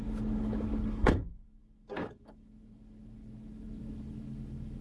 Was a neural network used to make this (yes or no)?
yes